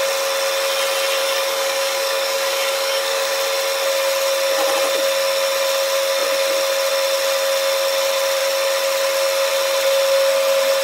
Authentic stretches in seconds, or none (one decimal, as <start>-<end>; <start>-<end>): 0.0-1.2; 3.3-10.8

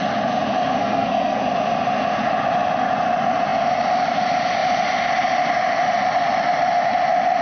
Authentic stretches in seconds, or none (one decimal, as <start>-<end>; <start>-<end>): 0.0-0.8; 1.4-7.4

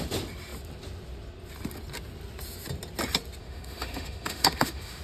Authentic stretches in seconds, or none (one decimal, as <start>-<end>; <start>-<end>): 0.0-3.4